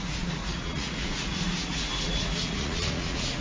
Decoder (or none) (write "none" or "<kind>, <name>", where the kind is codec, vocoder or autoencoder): vocoder, Vocos